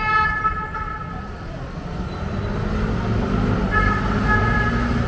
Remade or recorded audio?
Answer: recorded